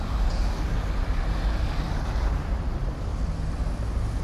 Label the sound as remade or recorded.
recorded